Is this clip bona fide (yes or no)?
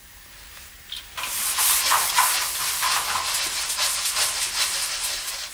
yes